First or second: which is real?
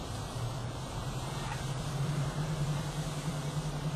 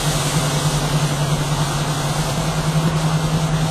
second